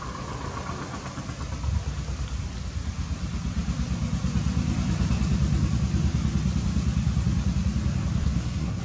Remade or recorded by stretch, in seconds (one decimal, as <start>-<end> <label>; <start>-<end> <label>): 0.0-8.2 recorded; 8.2-8.8 remade